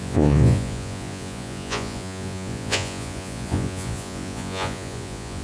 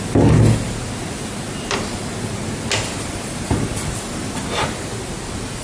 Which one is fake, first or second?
first